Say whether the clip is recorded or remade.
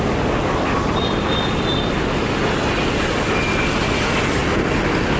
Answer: recorded